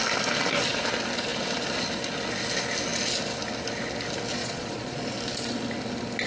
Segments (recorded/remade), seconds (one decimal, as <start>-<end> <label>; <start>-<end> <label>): 0.0-4.3 recorded; 4.3-5.0 remade; 5.0-6.3 recorded